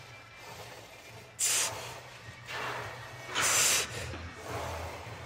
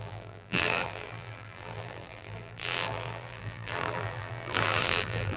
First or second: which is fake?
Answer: second